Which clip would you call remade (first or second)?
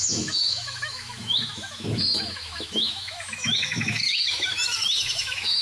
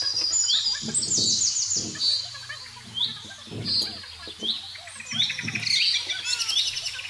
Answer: first